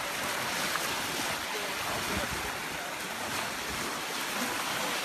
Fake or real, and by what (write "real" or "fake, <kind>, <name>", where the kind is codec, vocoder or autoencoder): real